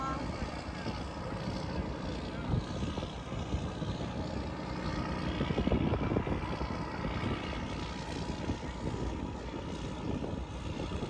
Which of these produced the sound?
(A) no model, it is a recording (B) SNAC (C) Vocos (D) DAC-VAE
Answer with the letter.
A